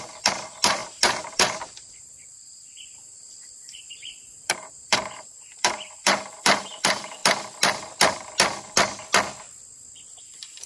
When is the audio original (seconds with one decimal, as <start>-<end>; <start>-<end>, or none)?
7.2-10.2